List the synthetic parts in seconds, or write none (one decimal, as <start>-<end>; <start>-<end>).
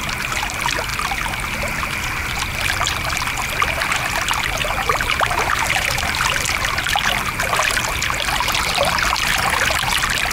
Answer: 4.6-6.1